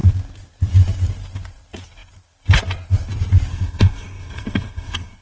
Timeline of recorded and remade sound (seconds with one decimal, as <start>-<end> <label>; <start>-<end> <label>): 0.0-3.5 recorded; 3.5-5.2 remade